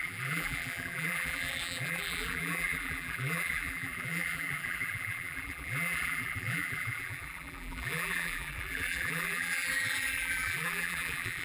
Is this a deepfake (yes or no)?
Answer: yes